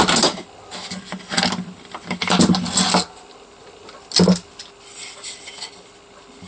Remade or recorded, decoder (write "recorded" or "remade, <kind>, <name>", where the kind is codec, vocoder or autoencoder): recorded